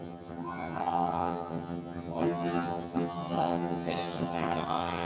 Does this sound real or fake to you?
fake